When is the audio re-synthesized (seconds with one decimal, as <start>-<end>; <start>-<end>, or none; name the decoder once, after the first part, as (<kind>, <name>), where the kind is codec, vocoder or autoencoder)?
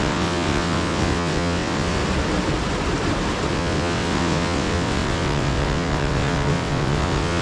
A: 0.0-2.0 (vocoder, WaveNeXt); 3.5-7.4